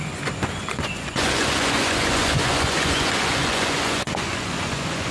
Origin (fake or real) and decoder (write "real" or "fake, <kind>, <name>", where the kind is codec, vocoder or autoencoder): fake, vocoder, Vocos